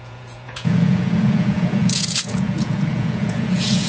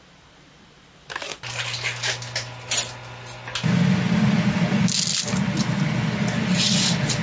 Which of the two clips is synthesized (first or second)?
first